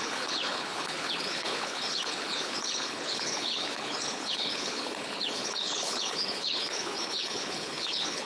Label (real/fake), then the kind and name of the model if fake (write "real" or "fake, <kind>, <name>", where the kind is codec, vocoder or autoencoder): fake, codec, HILCodec